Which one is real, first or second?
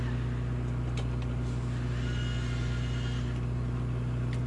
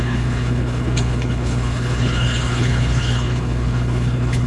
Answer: first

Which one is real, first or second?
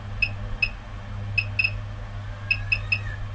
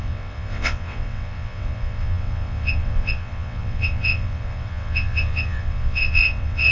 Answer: first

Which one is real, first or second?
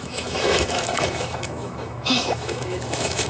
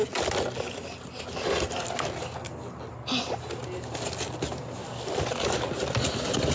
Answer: second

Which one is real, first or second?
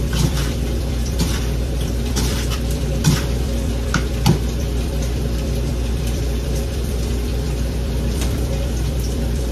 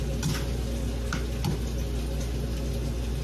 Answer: second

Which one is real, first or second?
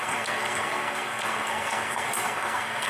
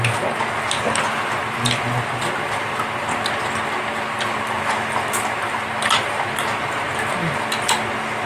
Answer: second